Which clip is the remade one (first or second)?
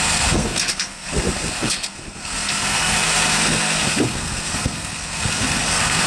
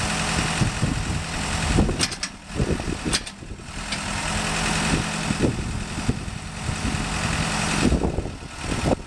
first